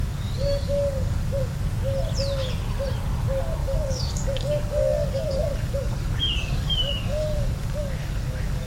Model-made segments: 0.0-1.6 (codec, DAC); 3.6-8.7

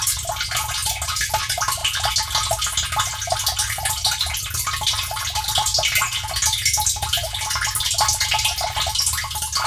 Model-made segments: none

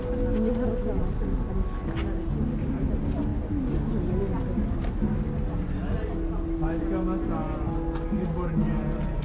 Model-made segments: none

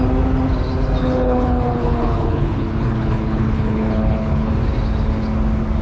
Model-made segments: 1.0-4.5 (codec, HILCodec)